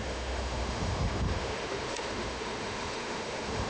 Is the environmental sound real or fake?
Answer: fake